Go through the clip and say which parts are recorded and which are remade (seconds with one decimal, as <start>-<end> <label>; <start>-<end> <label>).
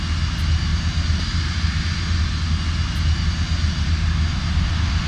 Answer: 0.0-5.1 recorded